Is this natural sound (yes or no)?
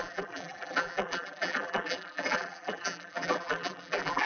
no